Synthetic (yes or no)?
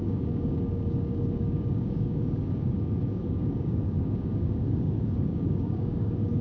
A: yes